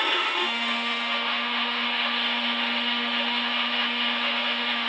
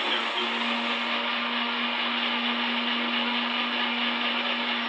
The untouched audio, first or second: second